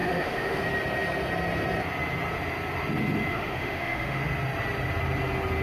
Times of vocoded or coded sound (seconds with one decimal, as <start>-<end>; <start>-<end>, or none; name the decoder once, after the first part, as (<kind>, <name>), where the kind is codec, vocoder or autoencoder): 0.0-0.6 (autoencoder, DAC-VAE); 3.3-4.2